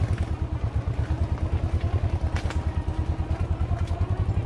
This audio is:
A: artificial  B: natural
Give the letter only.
B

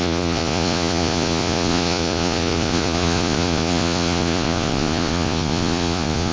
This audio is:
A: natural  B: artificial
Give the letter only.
B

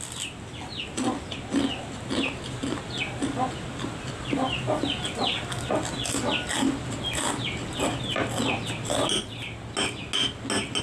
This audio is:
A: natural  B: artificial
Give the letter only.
A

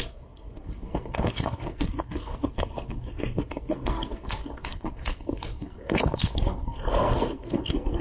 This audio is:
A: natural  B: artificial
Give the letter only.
B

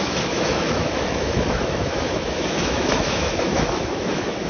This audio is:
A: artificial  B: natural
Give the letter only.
A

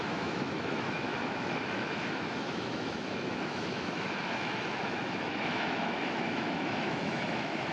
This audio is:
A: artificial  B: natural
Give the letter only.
A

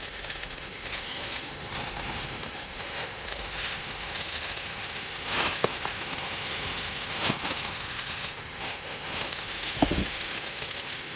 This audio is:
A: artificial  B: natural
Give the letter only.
A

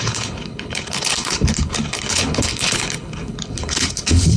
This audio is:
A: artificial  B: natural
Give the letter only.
A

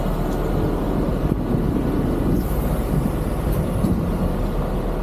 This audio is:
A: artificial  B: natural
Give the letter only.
B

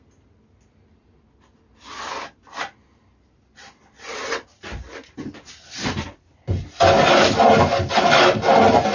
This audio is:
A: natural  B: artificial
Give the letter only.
A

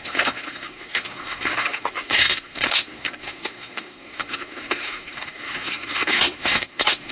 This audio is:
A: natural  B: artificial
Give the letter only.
B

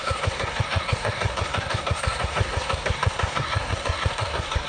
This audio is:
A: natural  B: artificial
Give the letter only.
B